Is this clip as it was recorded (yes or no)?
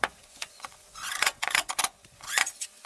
no